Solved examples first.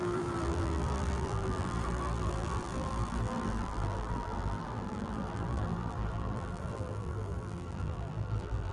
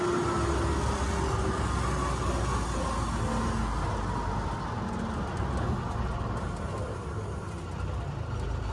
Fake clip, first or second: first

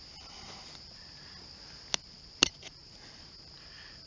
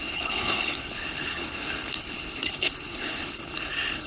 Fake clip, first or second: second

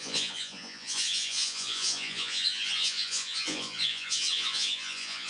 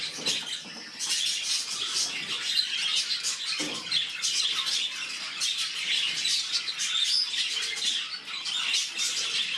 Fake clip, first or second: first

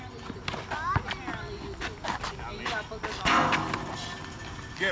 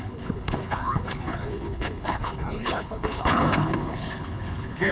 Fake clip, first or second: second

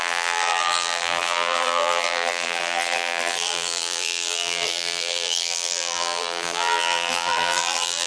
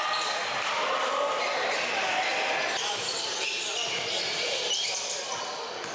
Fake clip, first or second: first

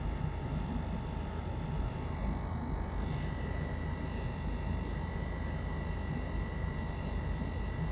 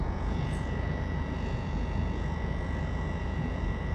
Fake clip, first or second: second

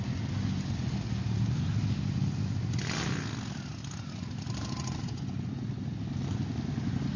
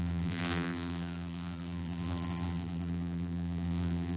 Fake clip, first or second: second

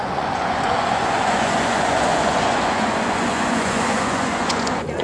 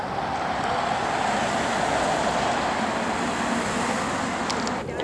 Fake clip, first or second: first